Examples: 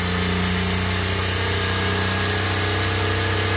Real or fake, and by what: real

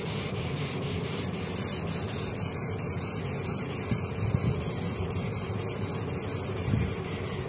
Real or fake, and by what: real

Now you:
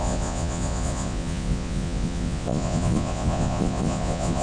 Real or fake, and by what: fake, vocoder, Vocos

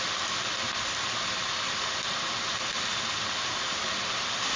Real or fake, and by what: real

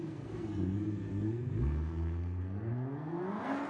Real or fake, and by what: fake, codec, SNAC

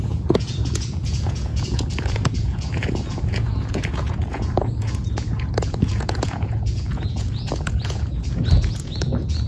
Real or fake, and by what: fake, vocoder, Vocos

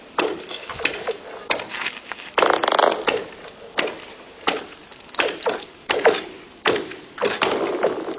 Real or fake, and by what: real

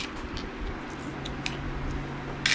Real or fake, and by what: real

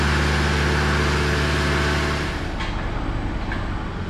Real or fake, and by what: real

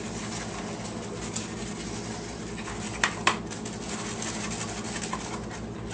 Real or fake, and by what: real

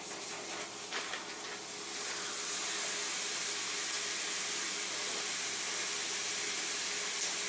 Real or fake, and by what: real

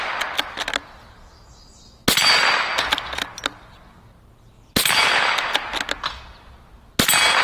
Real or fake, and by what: real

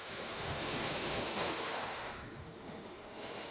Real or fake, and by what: fake, autoencoder, DAC-VAE